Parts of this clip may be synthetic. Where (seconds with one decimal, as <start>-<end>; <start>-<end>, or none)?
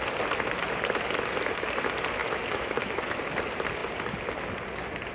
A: 2.2-3.2